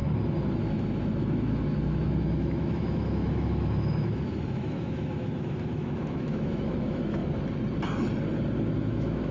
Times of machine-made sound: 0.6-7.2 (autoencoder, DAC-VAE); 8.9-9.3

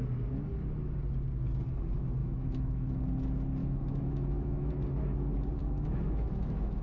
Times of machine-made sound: 2.2-3.0 (autoencoder, DAC-VAE); 3.6-4.7; 5.6-6.8

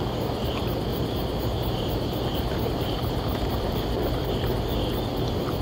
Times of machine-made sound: 0.9-4.3 (vocoder, BigVGAN v2)

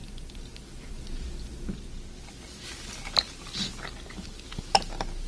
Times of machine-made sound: none

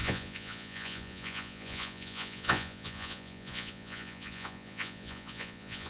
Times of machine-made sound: 0.0-5.9 (vocoder, Vocos)